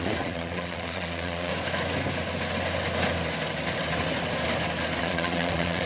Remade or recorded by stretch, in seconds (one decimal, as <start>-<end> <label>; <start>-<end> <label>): 0.0-1.5 remade; 1.5-5.0 recorded; 5.0-5.9 remade